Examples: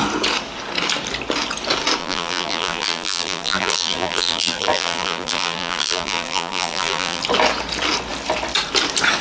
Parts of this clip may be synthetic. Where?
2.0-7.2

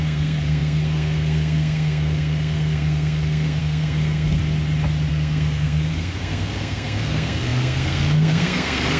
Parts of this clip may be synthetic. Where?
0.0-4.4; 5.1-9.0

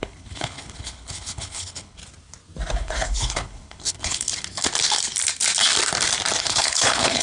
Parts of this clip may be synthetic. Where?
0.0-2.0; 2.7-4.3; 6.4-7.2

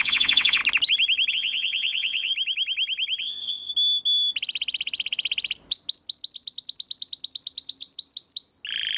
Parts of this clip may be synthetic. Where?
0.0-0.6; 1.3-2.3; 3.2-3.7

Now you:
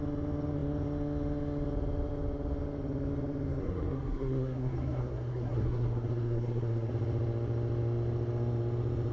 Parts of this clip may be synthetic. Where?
3.6-6.9

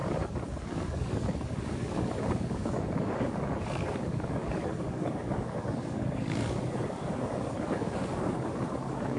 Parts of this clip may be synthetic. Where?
0.0-9.2

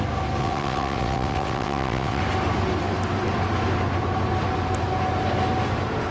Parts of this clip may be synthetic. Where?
0.4-2.2

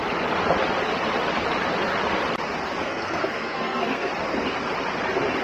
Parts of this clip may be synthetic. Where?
2.8-4.1